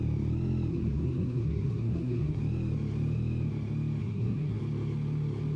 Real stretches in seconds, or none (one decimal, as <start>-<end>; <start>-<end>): 0.0-0.7; 2.4-4.0; 4.6-5.6